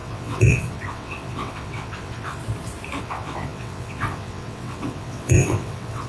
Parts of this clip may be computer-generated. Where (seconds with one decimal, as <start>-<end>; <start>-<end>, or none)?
0.0-2.4; 3.0-6.1